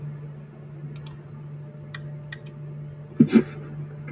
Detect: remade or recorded recorded